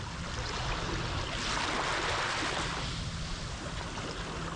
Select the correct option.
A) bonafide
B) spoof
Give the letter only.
A